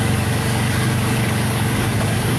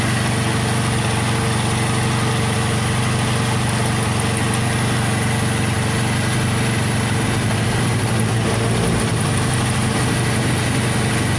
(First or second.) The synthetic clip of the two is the first